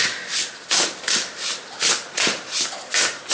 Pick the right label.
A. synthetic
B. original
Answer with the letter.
B